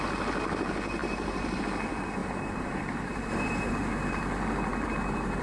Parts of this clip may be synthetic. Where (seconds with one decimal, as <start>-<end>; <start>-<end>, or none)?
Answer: 1.0-1.6; 2.2-3.7